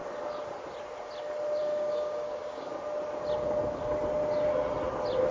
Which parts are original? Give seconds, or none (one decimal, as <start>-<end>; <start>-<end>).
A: 0.0-1.6; 2.7-5.3